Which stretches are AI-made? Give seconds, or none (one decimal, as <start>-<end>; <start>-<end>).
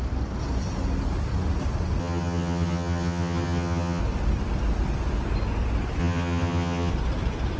2.0-4.0; 6.0-6.9